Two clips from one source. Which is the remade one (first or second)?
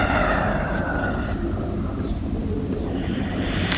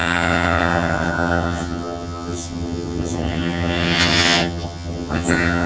second